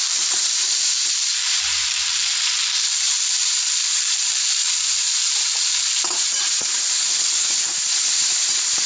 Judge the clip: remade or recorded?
remade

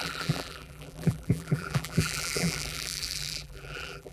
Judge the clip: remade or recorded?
remade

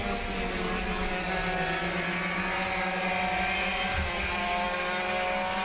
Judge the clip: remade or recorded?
recorded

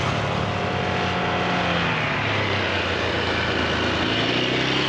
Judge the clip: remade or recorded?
recorded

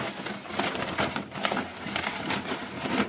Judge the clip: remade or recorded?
recorded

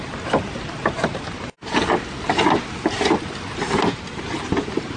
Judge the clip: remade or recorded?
recorded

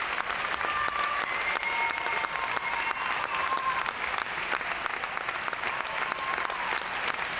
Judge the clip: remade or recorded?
recorded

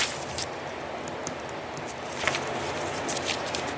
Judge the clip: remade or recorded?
remade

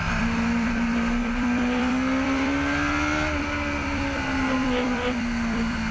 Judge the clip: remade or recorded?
remade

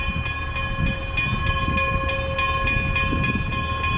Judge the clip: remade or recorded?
recorded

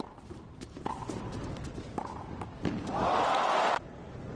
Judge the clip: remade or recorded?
recorded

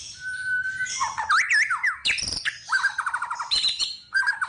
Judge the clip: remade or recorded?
remade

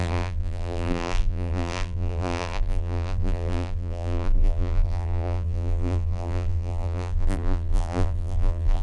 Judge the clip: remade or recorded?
remade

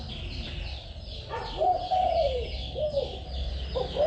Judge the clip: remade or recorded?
remade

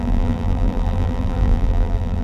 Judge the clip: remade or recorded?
remade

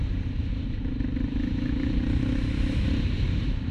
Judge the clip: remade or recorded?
remade